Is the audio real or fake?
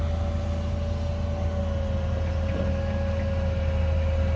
real